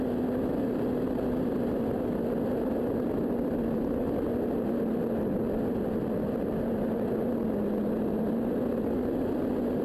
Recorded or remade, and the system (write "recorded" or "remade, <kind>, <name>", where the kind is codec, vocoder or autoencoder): recorded